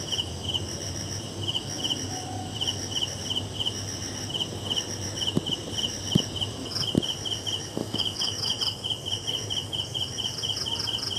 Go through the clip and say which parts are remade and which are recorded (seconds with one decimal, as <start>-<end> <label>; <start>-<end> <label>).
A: 0.0-7.8 recorded; 7.8-8.6 remade; 8.6-11.2 recorded